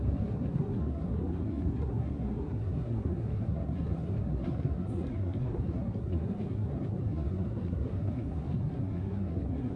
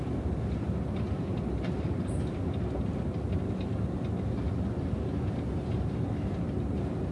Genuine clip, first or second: second